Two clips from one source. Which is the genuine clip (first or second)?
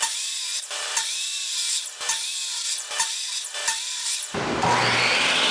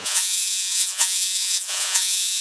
first